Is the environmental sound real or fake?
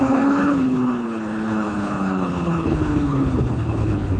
fake